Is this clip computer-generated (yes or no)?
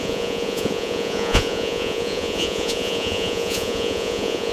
yes